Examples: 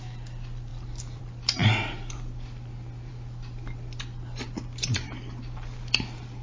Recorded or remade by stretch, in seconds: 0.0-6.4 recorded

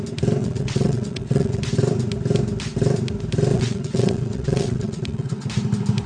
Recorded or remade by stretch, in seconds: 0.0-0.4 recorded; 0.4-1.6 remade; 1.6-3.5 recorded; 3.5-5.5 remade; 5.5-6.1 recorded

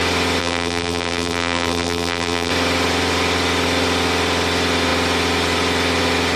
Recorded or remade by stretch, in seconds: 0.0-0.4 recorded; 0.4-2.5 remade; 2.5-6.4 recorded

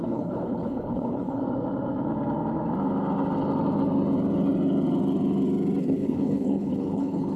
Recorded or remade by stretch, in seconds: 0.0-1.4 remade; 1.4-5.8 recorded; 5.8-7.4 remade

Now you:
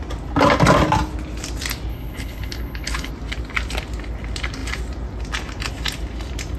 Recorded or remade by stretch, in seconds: 0.0-1.9 recorded; 1.9-3.1 remade; 3.1-6.6 recorded

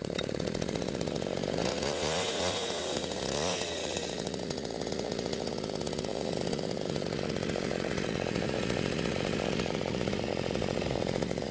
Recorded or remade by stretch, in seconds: 0.0-11.5 remade